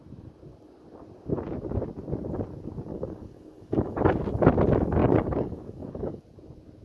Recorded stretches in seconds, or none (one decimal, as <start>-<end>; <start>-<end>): 0.0-2.9; 4.1-5.0; 6.2-6.8